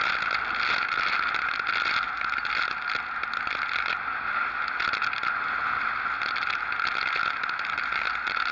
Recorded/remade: recorded